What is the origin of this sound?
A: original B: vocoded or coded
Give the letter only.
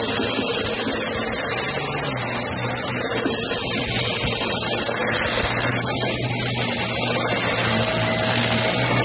A